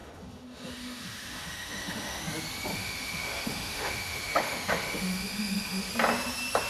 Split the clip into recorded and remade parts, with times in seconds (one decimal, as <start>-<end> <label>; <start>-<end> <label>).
0.0-2.2 remade; 2.2-2.7 recorded; 2.7-5.9 remade; 5.9-6.7 recorded